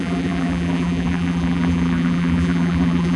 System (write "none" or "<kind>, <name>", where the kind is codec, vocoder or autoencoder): vocoder, BigVGAN v2